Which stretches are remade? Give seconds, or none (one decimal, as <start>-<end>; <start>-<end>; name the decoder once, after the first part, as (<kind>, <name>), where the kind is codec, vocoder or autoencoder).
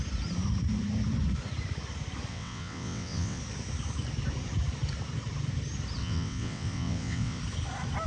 2.3-3.4 (vocoder, WaveNeXt); 6.0-7.4